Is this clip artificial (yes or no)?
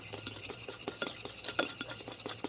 no